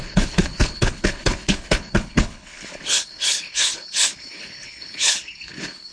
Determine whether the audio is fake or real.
fake